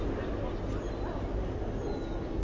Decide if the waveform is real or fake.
real